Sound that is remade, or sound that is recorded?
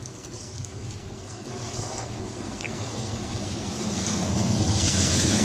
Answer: remade